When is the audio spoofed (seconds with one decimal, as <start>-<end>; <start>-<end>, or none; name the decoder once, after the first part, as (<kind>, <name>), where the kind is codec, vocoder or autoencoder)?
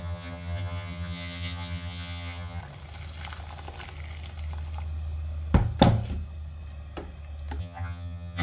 0.0-2.6 (vocoder, HiFi-GAN); 7.6-8.4